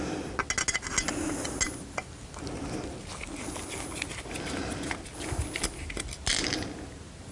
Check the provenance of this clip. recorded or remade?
recorded